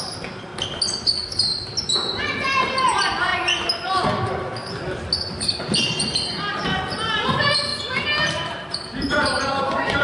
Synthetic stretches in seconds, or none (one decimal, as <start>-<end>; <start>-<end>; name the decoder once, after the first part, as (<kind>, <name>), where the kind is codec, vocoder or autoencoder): 0.0-0.5 (vocoder, BigVGAN v2); 2.2-3.3; 6.5-10.0

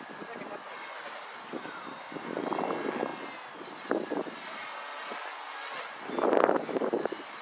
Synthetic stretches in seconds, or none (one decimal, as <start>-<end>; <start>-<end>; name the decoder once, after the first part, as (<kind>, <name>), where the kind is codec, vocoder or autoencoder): none

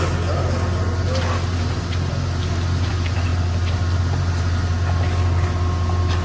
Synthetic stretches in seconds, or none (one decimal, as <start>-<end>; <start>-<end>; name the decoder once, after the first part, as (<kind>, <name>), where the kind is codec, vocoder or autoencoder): none

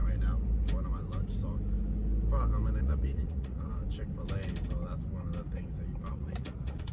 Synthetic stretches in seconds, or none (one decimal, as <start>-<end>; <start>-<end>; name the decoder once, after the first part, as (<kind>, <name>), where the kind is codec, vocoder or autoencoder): 2.8-3.7 (vocoder, Vocos); 6.1-6.9

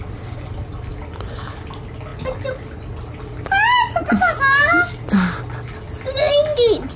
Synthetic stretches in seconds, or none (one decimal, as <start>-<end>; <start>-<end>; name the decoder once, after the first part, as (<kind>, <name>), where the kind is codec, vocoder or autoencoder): none

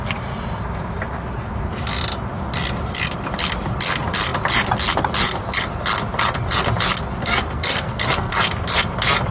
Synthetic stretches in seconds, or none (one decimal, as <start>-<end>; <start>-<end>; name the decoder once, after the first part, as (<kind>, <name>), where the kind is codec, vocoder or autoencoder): 7.2-8.3 (codec, SNAC)